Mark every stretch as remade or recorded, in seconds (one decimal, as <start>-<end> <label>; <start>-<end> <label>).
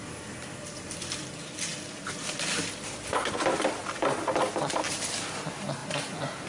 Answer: 0.0-6.5 recorded